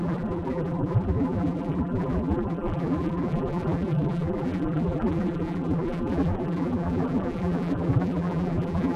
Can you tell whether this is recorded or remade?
remade